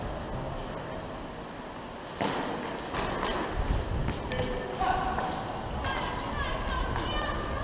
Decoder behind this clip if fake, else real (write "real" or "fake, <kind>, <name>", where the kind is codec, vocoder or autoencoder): real